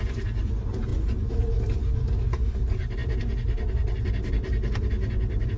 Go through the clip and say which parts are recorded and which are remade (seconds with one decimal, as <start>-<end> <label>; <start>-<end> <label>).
0.0-5.6 recorded